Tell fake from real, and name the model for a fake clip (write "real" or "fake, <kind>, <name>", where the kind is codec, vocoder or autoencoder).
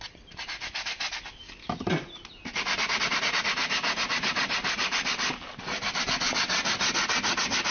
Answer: real